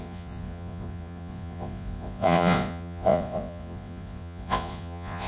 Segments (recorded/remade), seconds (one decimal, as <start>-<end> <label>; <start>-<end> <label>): 0.0-5.3 remade